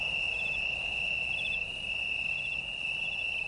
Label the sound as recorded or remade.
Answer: recorded